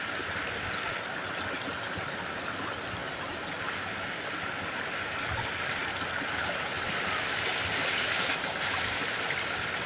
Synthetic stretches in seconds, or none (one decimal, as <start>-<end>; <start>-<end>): none